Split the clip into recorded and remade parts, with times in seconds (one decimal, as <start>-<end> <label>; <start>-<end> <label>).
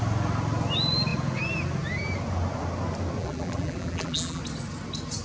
0.0-3.2 recorded; 3.2-4.4 remade; 4.4-5.2 recorded